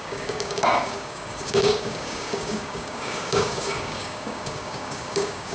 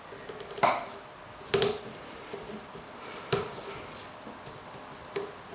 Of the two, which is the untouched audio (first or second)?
second